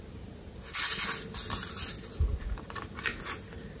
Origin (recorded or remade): recorded